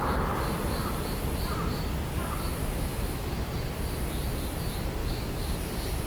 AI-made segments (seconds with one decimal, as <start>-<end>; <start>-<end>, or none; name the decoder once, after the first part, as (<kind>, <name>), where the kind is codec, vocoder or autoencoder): 2.6-3.5 (autoencoder, DAC-VAE); 5.0-5.6